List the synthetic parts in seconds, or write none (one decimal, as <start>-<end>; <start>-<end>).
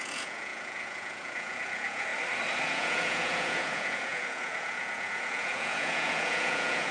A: 0.0-2.1; 2.6-6.9